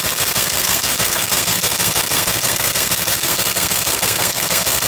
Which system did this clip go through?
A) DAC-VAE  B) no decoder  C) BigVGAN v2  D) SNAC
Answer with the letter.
D